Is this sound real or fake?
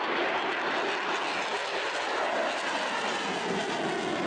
real